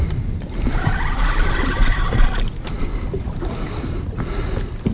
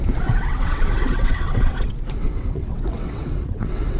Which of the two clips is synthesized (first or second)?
second